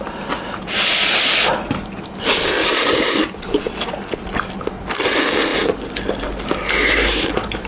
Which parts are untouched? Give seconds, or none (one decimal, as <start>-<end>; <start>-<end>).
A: 0.0-2.6; 3.9-7.7